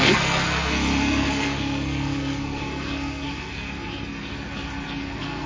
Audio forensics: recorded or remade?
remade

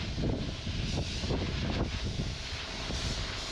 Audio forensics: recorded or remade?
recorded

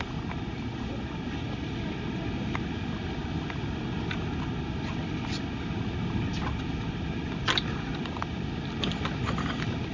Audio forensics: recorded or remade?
recorded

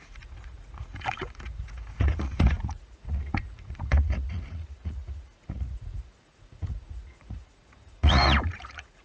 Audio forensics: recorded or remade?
remade